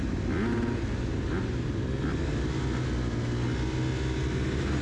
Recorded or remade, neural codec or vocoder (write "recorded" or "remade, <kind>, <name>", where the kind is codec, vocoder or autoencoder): recorded